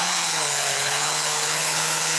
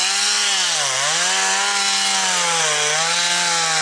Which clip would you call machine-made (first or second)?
first